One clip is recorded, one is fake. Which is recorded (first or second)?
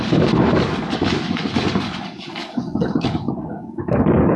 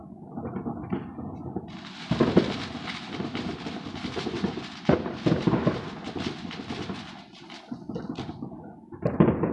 second